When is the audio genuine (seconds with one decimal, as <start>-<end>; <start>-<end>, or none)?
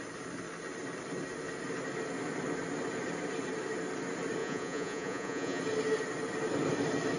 0.0-4.4; 5.6-7.2